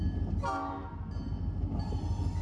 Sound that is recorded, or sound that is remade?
recorded